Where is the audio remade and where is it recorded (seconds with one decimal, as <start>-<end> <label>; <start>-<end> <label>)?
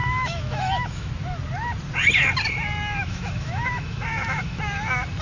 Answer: 0.0-1.1 remade; 1.1-3.0 recorded; 3.0-4.6 remade; 4.6-5.2 recorded